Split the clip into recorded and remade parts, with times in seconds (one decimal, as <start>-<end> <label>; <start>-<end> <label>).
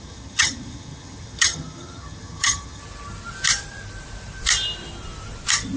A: 0.0-2.8 remade; 2.8-5.8 recorded